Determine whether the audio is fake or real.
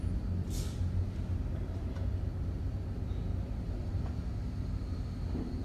real